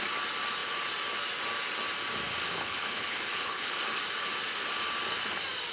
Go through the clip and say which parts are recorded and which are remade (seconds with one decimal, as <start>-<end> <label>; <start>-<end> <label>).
0.0-2.4 recorded; 2.4-4.0 remade; 4.0-5.7 recorded